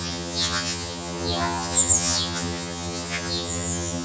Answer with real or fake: fake